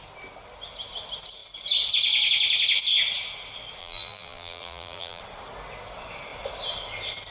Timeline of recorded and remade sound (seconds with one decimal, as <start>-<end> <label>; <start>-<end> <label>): 0.0-3.8 recorded; 3.8-5.2 remade; 5.2-7.3 recorded